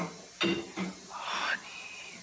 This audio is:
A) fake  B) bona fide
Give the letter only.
B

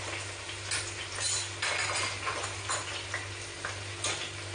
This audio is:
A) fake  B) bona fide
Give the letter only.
B